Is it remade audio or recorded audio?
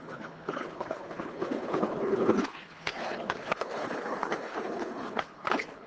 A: remade